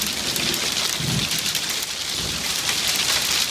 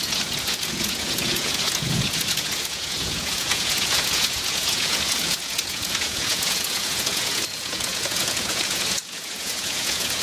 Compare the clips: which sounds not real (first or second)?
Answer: second